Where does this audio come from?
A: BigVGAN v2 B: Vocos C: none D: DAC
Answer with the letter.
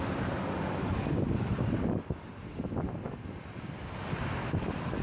C